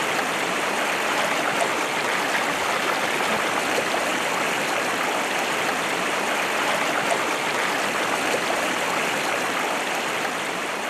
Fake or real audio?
real